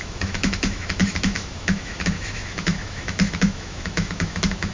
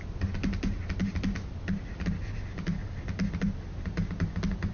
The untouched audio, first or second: second